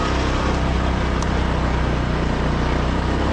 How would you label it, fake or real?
real